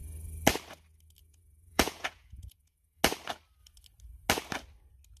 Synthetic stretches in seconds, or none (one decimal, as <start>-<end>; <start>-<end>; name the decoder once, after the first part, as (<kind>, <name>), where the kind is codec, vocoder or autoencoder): 1.2-3.0 (vocoder, Vocos)